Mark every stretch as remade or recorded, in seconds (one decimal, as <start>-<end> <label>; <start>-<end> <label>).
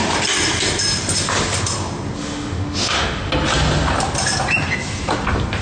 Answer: 0.0-2.2 recorded; 2.2-3.3 remade; 3.3-5.6 recorded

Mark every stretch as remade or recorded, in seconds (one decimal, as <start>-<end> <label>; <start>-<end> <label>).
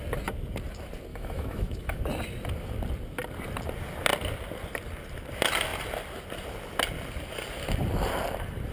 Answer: 0.0-1.1 recorded; 1.1-2.0 remade; 2.0-8.7 recorded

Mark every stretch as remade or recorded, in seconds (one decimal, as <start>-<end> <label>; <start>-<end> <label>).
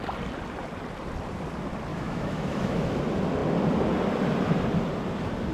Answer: 0.0-1.9 recorded; 1.9-3.0 remade; 3.0-5.5 recorded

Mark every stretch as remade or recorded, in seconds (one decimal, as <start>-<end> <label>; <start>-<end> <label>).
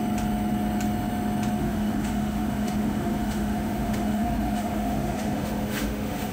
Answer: 0.0-1.6 recorded; 1.6-6.3 remade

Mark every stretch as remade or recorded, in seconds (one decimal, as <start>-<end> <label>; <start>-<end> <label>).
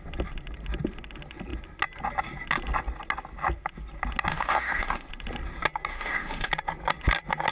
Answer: 0.0-4.3 recorded; 4.3-5.1 remade; 5.1-5.9 recorded; 5.9-6.5 remade; 6.5-7.5 recorded